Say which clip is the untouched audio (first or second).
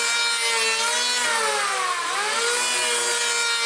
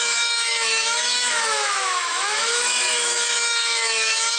first